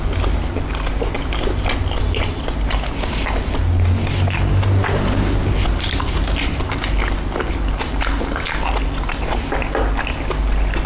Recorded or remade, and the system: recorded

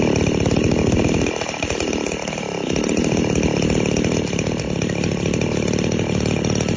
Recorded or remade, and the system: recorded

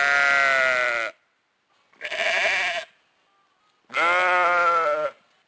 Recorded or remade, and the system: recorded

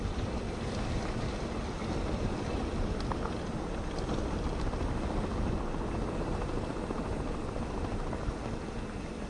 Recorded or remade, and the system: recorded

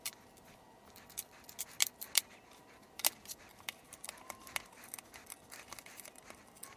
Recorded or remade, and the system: recorded